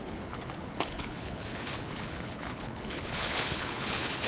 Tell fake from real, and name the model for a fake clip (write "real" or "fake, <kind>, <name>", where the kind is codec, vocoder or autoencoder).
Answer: fake, codec, HILCodec